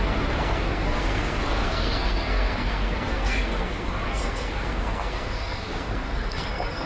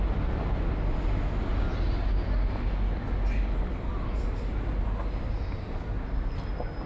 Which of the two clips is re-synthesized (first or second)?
first